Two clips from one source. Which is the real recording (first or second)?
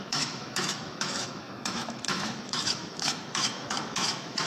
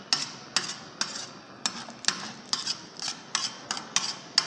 second